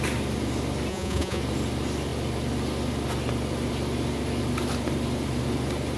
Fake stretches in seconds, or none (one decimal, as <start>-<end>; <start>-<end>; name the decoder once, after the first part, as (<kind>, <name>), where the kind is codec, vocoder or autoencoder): 0.9-1.4 (vocoder, Vocos)